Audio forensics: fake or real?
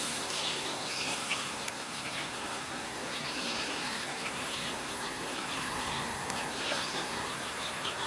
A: fake